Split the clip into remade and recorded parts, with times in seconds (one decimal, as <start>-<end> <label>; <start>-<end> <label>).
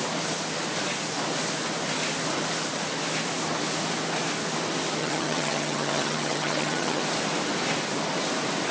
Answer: 0.0-5.0 recorded; 5.0-7.0 remade; 7.0-8.7 recorded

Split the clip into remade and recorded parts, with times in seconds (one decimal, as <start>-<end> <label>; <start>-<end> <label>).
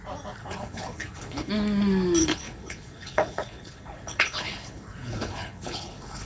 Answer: 0.0-0.4 recorded; 0.4-1.5 remade; 1.5-2.2 recorded; 2.2-6.3 remade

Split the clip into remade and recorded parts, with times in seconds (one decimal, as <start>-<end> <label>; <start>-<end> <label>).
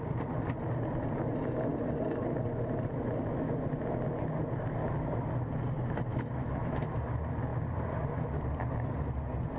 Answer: 0.0-6.1 recorded; 6.1-6.9 remade; 6.9-9.6 recorded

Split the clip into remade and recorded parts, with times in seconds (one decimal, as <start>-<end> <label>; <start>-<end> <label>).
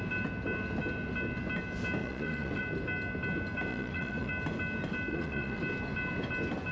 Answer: 0.0-2.0 recorded; 2.0-2.6 remade; 2.6-3.7 recorded; 3.7-4.3 remade; 4.3-5.1 recorded; 5.1-5.6 remade; 5.6-6.7 recorded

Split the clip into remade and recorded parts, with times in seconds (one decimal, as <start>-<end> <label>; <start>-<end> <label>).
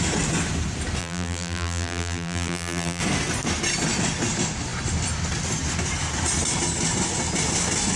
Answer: 0.0-1.0 recorded; 1.0-3.0 remade; 3.0-8.0 recorded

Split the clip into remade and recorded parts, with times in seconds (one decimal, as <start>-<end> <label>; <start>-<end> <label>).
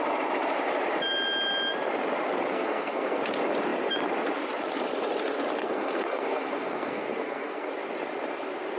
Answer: 0.0-2.5 recorded; 2.5-3.2 remade; 3.2-5.6 recorded; 5.6-7.7 remade; 7.7-8.8 recorded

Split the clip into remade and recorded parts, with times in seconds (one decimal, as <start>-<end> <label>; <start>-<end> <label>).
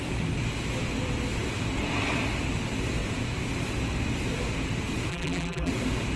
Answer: 0.0-5.1 recorded; 5.1-5.7 remade; 5.7-6.2 recorded